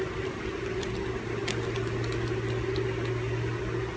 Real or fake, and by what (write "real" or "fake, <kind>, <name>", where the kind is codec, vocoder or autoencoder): real